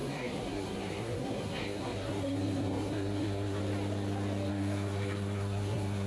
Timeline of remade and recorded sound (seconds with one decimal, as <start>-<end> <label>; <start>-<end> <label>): 0.0-3.6 remade; 3.6-4.5 recorded; 4.5-6.1 remade